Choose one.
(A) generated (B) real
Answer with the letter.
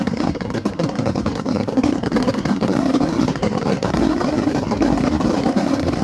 A